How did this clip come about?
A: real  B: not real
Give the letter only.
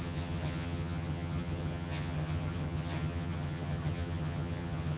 B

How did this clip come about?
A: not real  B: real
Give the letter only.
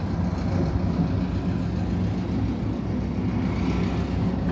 B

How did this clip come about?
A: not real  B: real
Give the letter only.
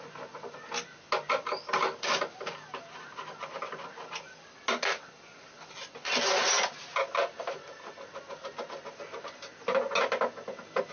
B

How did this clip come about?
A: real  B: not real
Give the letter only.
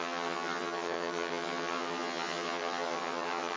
B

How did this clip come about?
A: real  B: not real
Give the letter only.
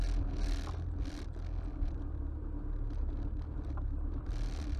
A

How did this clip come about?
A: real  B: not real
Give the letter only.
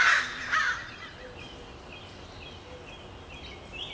A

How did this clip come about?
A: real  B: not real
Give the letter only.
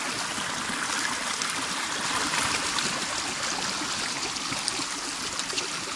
A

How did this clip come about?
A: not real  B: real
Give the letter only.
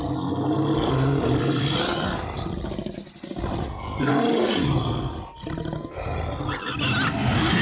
B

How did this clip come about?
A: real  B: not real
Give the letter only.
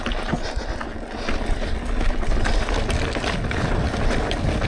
A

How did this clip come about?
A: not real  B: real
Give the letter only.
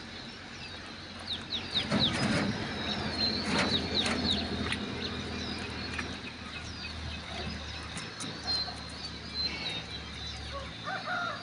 B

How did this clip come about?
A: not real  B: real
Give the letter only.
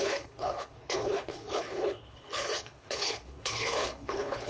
A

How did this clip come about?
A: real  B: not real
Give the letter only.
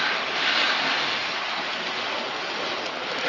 A